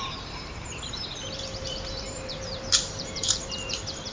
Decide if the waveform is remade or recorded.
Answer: remade